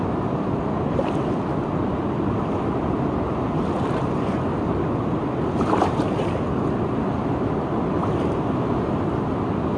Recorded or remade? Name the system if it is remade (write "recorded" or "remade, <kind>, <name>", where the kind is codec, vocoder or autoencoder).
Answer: recorded